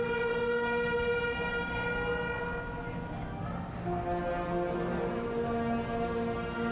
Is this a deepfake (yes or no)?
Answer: no